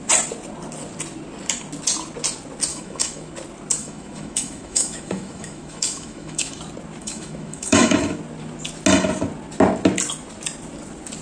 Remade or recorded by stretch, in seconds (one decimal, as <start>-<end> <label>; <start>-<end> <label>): 0.0-2.7 recorded; 2.7-3.3 remade; 3.3-3.8 recorded; 3.8-6.6 remade; 6.6-7.0 recorded; 7.0-8.2 remade; 8.2-11.2 recorded